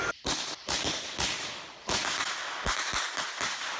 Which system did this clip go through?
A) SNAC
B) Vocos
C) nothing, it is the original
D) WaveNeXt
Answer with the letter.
C